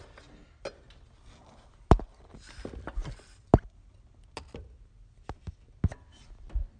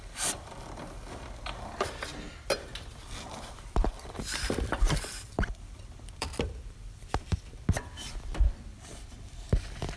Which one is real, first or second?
first